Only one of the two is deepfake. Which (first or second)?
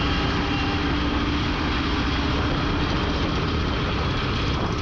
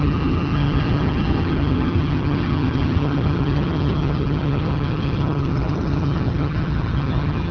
second